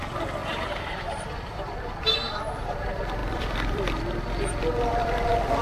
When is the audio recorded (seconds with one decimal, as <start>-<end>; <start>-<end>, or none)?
0.0-0.4; 1.4-3.2; 4.2-5.6